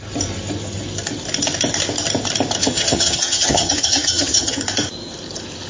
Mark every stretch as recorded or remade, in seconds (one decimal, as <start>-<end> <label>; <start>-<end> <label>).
0.0-2.6 recorded; 2.6-4.6 remade; 4.6-5.7 recorded